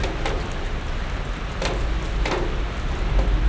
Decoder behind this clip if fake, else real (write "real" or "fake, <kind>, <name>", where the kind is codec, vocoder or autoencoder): real